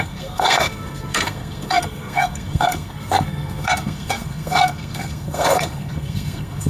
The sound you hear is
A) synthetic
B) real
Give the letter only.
A